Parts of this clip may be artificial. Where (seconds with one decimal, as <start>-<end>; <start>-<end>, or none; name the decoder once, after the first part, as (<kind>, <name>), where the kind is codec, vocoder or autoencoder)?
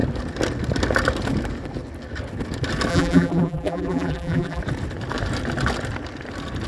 2.9-4.6 (vocoder, BigVGAN v2)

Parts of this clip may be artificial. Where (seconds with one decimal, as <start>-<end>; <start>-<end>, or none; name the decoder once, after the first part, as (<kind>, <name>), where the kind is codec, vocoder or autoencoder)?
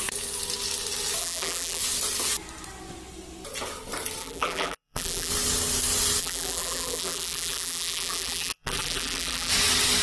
1.2-1.8 (vocoder, BigVGAN v2); 4.2-5.3; 6.2-9.5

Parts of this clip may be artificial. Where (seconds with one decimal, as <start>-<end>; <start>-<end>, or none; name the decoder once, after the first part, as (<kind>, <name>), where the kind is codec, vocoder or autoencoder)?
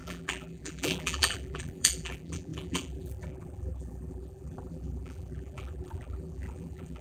0.0-7.0 (vocoder, BigVGAN v2)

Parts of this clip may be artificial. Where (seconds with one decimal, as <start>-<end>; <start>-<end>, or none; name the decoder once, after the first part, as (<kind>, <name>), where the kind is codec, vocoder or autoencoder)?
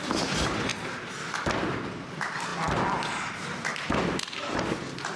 none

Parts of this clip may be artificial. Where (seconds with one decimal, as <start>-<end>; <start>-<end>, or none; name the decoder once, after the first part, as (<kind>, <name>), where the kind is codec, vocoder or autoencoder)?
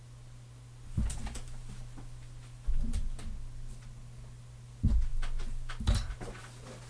none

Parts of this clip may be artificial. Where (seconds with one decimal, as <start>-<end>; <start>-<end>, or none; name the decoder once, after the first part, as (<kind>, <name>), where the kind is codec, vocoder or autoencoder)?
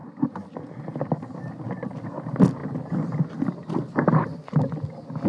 2.6-4.6 (vocoder, BigVGAN v2)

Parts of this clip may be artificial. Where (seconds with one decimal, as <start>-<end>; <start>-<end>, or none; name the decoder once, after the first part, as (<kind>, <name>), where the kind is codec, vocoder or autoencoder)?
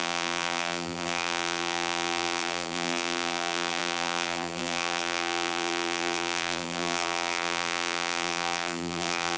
0.0-9.4 (vocoder, BigVGAN v2)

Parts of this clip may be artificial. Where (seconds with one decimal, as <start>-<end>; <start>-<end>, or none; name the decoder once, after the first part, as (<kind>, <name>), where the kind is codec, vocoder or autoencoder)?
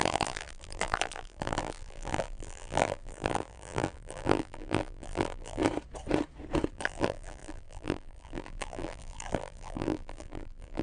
0.0-5.6 (vocoder, BigVGAN v2); 6.7-10.8